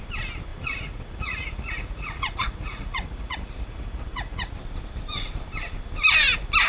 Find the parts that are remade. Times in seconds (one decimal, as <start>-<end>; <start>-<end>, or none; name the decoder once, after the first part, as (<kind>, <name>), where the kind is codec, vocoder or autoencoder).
0.5-4.5 (vocoder, Vocos)